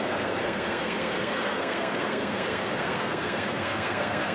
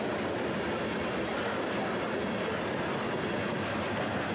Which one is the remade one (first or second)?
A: first